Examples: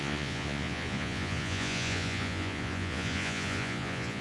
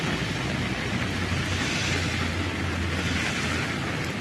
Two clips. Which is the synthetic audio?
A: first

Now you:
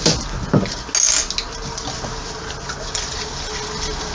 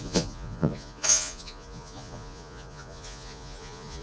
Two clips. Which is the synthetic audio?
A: second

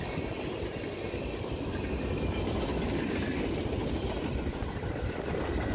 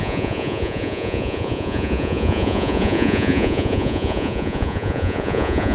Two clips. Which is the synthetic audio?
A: second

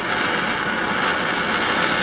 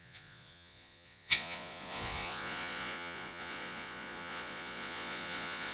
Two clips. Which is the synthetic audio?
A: second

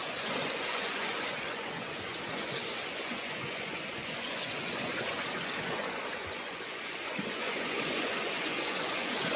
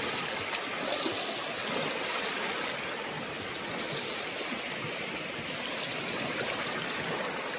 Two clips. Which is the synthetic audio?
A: first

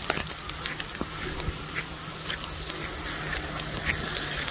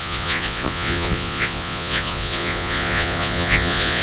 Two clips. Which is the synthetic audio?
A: second